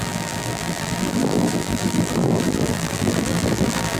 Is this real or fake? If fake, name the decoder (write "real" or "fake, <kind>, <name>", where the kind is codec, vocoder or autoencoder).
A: fake, vocoder, BigVGAN v2